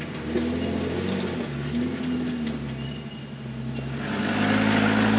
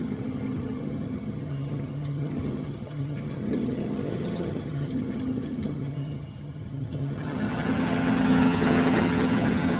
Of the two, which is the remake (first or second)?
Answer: second